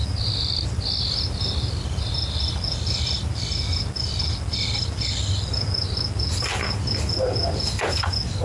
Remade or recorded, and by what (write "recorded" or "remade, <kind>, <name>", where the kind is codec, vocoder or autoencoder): recorded